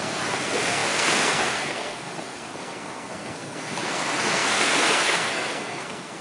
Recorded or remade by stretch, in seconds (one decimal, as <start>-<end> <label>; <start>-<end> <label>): 0.0-6.2 remade